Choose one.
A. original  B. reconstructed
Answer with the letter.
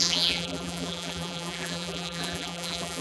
B